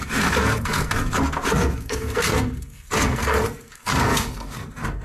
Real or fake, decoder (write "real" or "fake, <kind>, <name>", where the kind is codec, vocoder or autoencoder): fake, codec, SNAC